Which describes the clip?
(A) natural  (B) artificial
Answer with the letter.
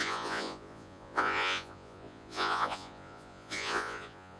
B